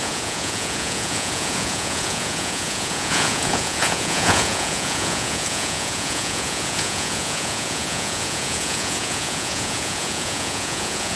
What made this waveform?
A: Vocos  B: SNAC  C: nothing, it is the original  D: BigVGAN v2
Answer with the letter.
A